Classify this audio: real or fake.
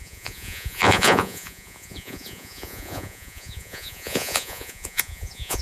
fake